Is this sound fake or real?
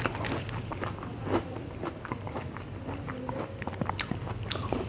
real